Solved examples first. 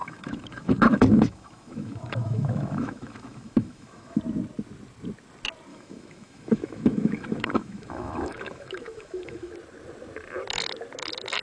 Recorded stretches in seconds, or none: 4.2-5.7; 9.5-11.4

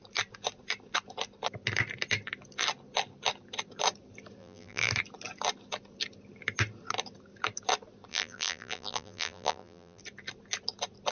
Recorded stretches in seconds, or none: 0.0-4.4; 4.9-8.1; 10.0-11.1

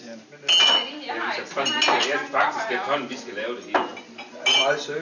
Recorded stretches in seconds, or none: 0.0-5.0

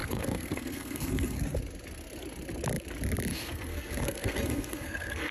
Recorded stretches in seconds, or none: 1.4-3.3

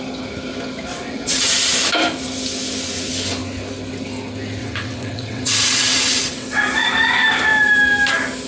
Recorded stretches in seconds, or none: 0.0-0.9; 1.5-4.6; 6.6-8.5

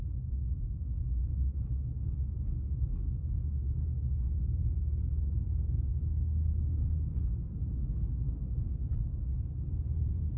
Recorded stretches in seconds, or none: 1.3-3.1; 5.9-6.6; 7.4-8.5